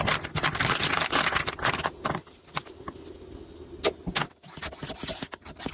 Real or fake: real